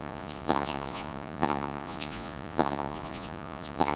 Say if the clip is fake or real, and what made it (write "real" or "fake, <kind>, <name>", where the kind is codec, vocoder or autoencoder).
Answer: fake, vocoder, Vocos